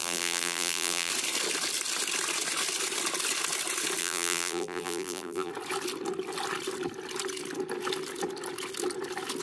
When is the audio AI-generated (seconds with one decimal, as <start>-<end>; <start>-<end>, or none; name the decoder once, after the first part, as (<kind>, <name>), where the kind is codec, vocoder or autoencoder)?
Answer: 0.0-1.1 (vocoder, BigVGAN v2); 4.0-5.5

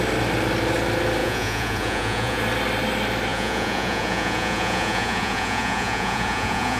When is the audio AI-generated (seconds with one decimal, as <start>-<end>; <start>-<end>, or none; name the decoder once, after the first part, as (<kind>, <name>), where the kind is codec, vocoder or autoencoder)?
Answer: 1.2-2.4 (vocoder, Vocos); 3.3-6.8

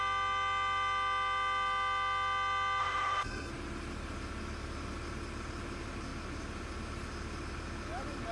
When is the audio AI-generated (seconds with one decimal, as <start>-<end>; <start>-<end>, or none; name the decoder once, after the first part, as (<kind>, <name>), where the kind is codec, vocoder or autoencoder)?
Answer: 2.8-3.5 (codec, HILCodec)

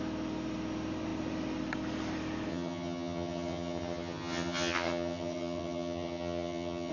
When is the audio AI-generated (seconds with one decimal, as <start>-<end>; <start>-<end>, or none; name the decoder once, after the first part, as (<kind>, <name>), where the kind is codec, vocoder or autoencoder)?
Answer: 2.5-6.9 (vocoder, HiFi-GAN)

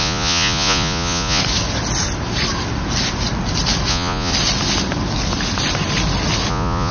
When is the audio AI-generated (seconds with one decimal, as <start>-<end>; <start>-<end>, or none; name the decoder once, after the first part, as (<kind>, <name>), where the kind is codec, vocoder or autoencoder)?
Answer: 0.0-1.4 (vocoder, Vocos); 3.9-4.3; 6.5-6.9

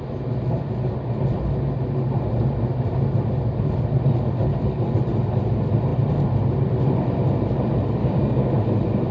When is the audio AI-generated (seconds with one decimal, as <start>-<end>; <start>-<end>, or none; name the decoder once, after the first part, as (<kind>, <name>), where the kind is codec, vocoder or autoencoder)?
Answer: 8.0-8.5 (codec, DAC)